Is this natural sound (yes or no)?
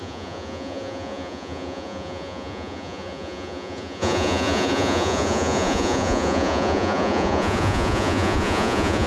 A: no